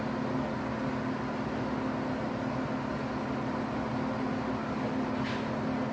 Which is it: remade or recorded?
recorded